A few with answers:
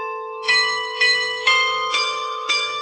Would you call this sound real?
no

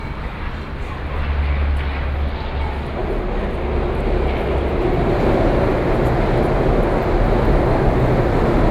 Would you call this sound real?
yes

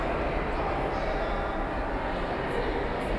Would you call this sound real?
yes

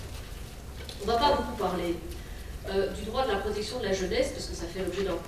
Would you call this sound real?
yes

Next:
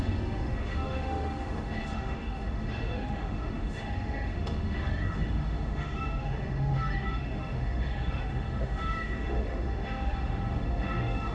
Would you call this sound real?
no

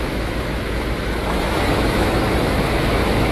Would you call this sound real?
no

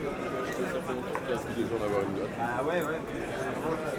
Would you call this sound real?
yes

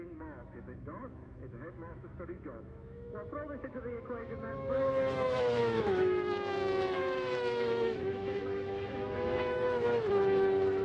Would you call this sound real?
no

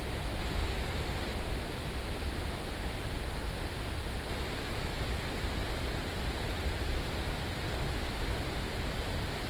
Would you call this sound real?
yes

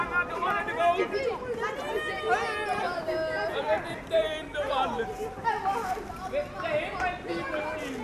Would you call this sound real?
yes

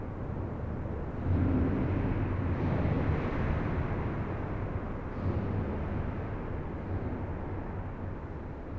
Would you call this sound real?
yes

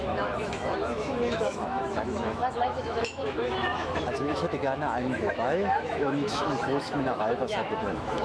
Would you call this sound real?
no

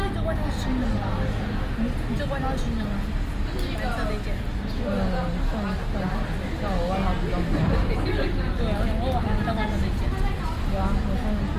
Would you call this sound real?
yes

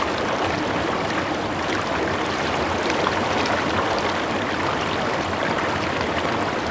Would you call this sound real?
yes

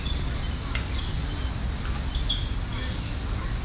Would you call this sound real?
yes